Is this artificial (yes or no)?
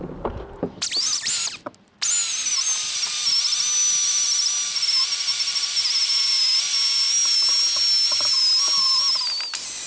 no